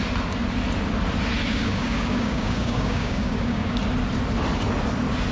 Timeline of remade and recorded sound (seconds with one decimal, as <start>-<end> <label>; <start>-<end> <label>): 0.0-1.5 recorded; 1.5-3.8 remade; 3.8-5.3 recorded